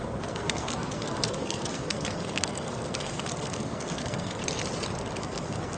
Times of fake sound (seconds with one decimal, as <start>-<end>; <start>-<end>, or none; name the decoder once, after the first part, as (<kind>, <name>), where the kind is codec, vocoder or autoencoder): 0.0-4.4 (codec, SNAC); 5.2-5.8